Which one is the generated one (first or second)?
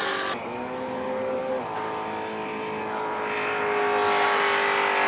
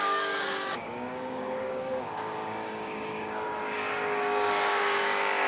second